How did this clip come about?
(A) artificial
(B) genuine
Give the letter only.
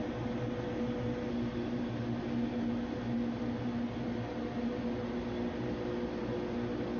B